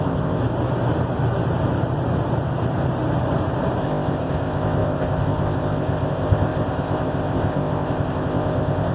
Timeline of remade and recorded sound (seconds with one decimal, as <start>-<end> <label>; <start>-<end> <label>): 0.0-0.4 remade; 0.4-3.8 recorded; 3.8-8.9 remade